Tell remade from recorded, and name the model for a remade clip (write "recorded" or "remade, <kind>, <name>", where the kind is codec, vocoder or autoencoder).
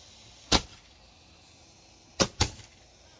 recorded